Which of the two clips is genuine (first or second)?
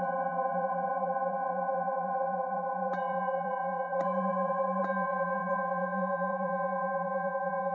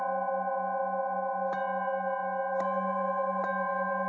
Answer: second